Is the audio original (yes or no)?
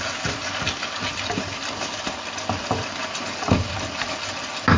yes